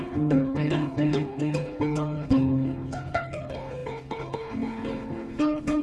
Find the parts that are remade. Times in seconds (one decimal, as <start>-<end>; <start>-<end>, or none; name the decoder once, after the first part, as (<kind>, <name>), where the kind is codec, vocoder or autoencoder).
0.0-5.8 (codec, HILCodec)